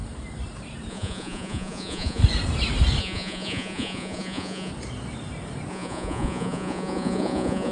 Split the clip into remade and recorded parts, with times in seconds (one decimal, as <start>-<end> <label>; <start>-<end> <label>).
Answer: 0.0-0.9 recorded; 0.9-2.2 remade; 2.2-3.0 recorded; 3.0-4.7 remade; 4.7-5.7 recorded; 5.7-7.7 remade